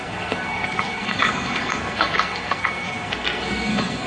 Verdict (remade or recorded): remade